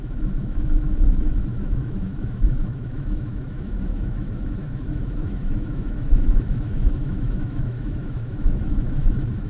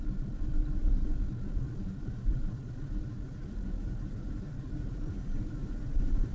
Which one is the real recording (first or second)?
second